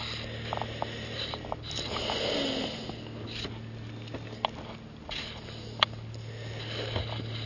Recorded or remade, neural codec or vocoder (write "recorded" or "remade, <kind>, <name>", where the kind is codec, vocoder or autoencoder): recorded